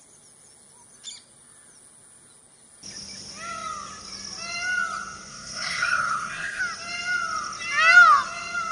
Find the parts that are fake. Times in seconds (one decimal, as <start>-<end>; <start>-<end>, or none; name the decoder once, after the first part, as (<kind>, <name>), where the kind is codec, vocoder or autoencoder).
5.3-6.6 (codec, SNAC)

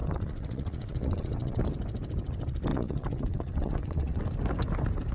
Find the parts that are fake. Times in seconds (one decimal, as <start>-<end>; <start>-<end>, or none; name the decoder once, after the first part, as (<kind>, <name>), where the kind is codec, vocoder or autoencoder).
0.0-1.6 (vocoder, WaveNeXt); 2.7-4.2

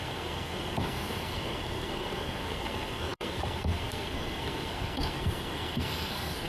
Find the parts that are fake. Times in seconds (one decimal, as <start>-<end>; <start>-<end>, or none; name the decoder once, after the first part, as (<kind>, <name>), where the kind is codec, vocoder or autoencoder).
0.0-6.5 (codec, SNAC)

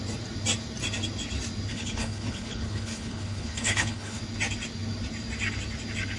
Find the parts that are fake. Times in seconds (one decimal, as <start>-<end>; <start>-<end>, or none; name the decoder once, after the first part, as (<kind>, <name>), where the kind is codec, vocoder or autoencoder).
1.7-4.2 (codec, HILCodec)